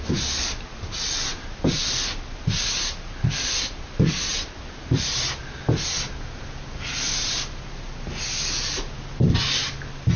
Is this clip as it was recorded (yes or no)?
yes